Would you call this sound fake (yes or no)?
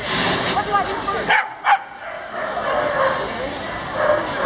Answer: no